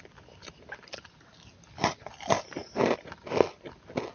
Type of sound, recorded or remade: recorded